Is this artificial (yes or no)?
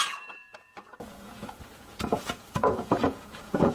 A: yes